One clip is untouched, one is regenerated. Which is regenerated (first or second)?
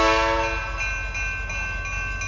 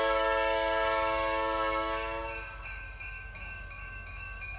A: second